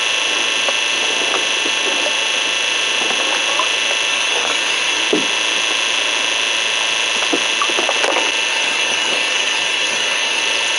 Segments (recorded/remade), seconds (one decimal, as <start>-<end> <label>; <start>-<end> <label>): 0.0-4.1 recorded; 4.1-5.0 remade; 5.0-8.5 recorded; 8.5-10.4 remade; 10.4-10.8 recorded